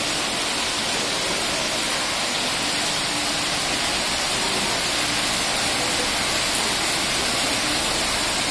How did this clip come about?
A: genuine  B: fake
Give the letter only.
A